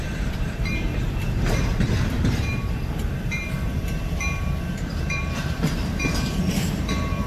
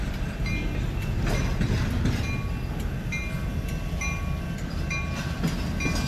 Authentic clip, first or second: second